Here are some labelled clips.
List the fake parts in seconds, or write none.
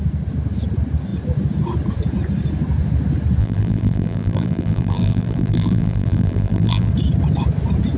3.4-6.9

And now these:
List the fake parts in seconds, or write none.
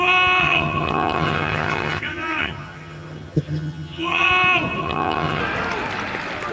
0.4-4.3; 4.8-5.4